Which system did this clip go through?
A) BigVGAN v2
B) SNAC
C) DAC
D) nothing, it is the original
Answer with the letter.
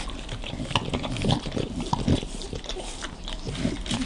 D